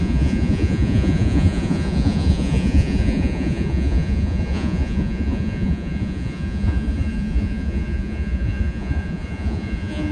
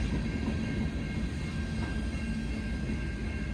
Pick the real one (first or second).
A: second